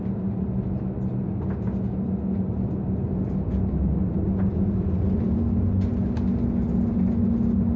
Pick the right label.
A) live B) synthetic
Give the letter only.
A